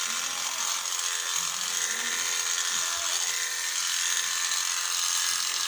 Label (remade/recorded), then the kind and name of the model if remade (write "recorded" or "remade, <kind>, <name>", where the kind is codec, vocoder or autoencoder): recorded